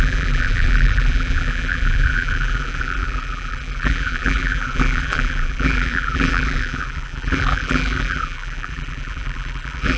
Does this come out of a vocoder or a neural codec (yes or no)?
yes